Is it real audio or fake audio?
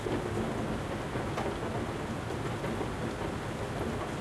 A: real